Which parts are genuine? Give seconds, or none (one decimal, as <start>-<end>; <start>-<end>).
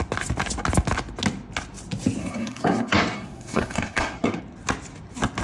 0.0-2.2; 4.4-5.4